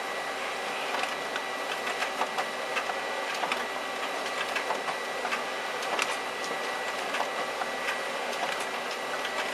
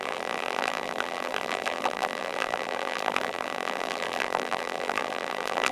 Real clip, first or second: first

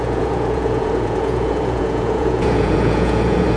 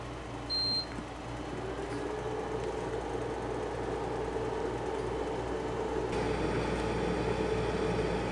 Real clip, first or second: second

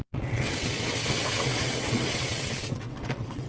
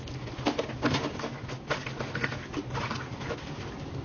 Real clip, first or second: second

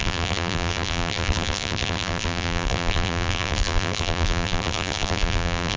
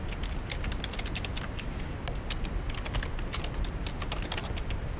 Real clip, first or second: second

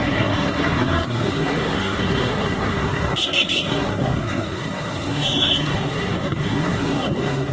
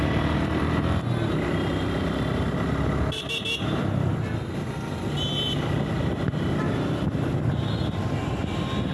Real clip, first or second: second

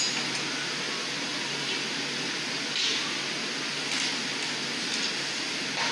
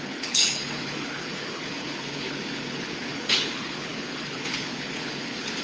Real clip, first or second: first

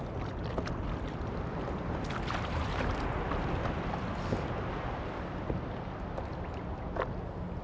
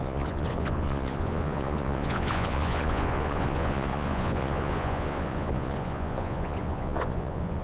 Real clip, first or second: first